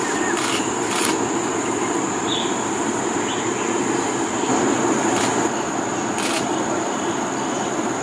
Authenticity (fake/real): real